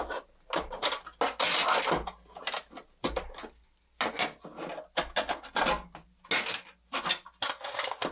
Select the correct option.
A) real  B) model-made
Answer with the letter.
A